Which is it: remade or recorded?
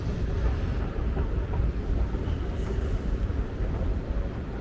recorded